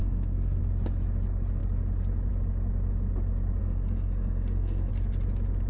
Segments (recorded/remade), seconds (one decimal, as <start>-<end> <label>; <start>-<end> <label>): 0.0-0.6 remade; 0.6-3.6 recorded; 3.6-4.9 remade; 4.9-5.7 recorded